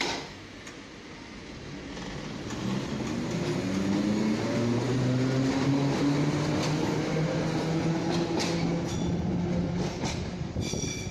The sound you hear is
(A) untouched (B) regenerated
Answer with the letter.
A